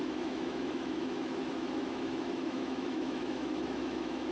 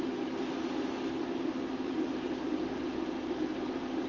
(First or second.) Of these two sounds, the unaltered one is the second